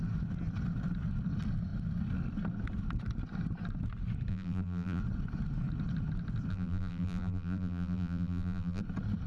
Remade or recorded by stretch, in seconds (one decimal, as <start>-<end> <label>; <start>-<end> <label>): 0.0-4.3 recorded; 4.3-5.0 remade; 5.0-6.5 recorded; 6.5-8.8 remade; 8.8-9.3 recorded

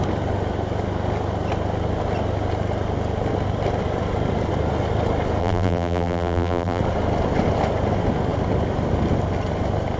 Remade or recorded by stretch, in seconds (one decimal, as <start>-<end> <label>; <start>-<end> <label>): 0.0-5.4 recorded; 5.4-6.8 remade; 6.8-10.0 recorded

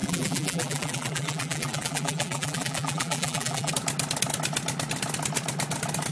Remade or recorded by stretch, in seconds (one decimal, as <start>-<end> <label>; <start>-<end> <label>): 0.0-3.7 remade; 3.7-6.1 recorded

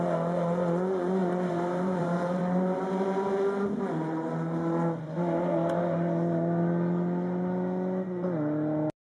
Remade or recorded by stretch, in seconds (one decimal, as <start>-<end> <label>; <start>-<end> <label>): 0.0-1.2 recorded; 1.2-2.4 remade; 2.4-9.1 recorded

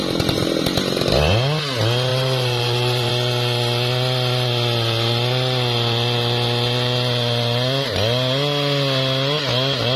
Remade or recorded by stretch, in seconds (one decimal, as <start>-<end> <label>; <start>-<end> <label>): 0.0-2.1 recorded; 2.1-3.1 remade; 3.1-10.0 recorded

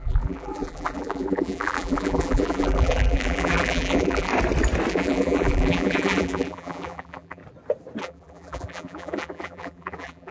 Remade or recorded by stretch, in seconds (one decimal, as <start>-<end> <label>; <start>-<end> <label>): 0.0-4.3 remade; 4.3-4.9 recorded; 4.9-7.4 remade; 7.4-8.0 recorded; 8.0-10.3 remade